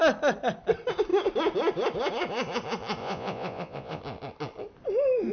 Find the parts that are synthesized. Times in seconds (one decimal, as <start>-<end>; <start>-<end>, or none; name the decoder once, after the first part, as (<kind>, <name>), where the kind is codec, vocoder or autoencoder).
3.0-4.0 (vocoder, Vocos)